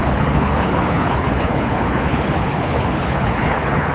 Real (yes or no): no